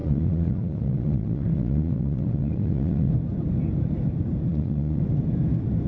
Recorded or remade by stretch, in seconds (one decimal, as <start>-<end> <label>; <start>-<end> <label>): 0.0-3.1 remade; 3.1-4.5 recorded; 4.5-5.0 remade; 5.0-5.9 recorded